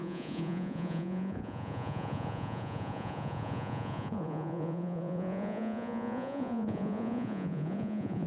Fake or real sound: fake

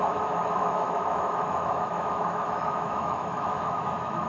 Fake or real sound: fake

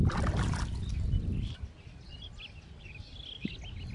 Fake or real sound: real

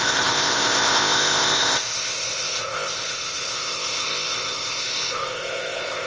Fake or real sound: fake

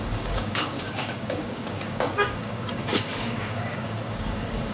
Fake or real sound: fake